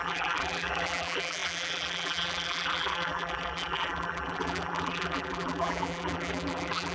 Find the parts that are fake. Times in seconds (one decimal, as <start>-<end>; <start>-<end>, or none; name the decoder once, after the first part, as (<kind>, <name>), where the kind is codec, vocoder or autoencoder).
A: 0.0-6.9 (vocoder, BigVGAN v2)